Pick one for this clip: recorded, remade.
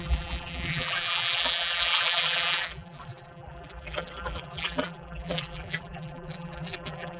remade